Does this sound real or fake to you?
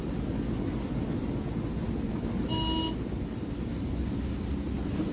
real